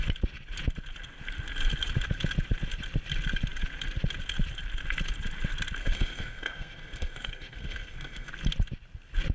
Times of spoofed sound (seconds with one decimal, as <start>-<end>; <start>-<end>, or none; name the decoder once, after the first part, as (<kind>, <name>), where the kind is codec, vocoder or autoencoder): 5.8-8.3 (codec, SNAC)